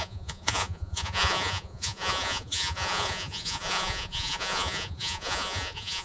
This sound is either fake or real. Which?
fake